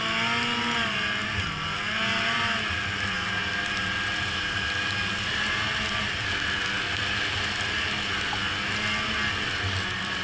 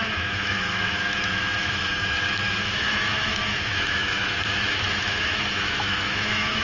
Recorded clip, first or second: first